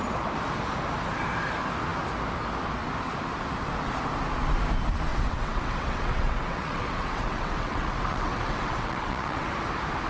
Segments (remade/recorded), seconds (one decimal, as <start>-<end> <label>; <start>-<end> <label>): 0.0-5.1 recorded; 5.1-9.5 remade; 9.5-10.1 recorded